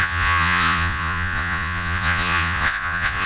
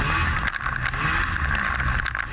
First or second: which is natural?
second